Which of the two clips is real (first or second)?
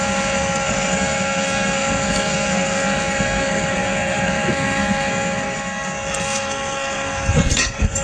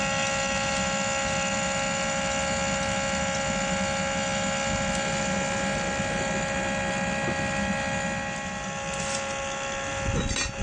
second